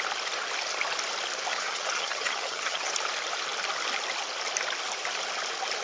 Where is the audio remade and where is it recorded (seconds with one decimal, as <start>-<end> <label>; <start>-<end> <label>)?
0.0-1.5 recorded; 1.5-2.9 remade; 2.9-5.8 recorded